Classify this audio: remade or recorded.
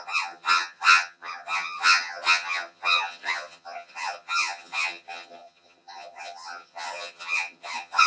remade